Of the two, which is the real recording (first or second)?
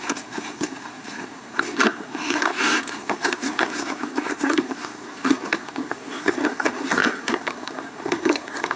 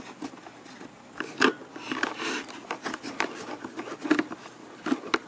second